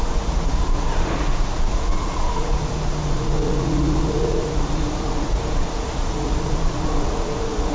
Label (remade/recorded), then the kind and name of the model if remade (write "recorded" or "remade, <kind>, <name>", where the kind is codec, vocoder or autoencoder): remade, vocoder, Vocos